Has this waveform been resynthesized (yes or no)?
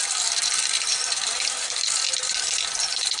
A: no